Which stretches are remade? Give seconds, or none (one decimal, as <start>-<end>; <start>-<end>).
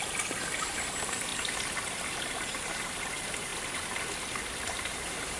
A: 0.0-1.3; 1.9-3.5; 4.7-5.4